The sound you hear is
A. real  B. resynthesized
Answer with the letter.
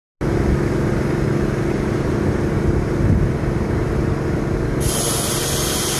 A